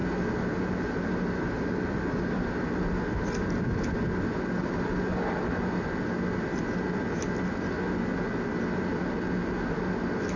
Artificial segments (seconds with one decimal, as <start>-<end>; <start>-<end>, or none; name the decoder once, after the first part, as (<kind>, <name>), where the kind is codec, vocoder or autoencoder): none